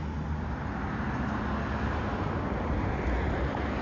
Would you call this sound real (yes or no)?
yes